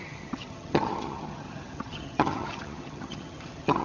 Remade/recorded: remade